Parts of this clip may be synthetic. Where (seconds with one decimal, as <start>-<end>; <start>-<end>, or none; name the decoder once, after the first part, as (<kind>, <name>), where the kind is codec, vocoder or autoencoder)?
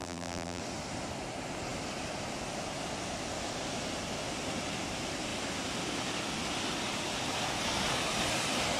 0.0-0.6 (vocoder, BigVGAN v2)